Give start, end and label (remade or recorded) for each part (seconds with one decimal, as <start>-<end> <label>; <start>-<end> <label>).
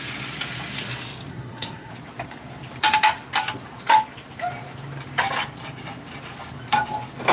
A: 0.0-1.3 recorded; 1.3-1.9 remade; 1.9-7.3 recorded